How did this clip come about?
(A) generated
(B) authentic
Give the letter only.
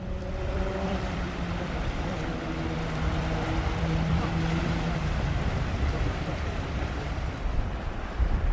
A